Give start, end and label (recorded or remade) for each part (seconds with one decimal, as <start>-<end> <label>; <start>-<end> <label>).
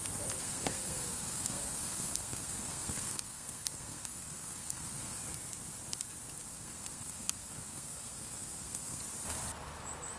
0.0-0.4 recorded; 0.4-5.2 remade; 5.2-6.5 recorded; 6.5-9.0 remade; 9.0-10.2 recorded